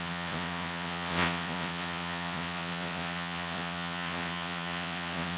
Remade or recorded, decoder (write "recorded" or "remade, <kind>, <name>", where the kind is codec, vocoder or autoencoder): remade, vocoder, Vocos